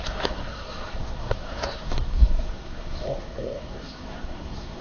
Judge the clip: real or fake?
fake